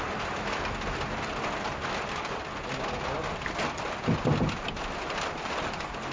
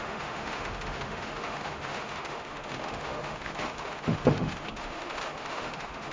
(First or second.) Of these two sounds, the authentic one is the first